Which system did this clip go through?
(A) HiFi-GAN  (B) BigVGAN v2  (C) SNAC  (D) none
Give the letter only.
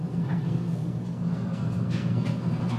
C